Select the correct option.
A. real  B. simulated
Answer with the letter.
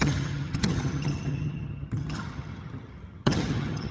B